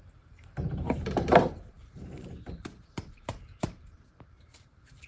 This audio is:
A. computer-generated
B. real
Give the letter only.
A